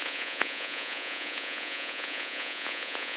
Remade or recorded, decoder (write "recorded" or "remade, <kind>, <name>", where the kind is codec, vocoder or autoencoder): remade, vocoder, Vocos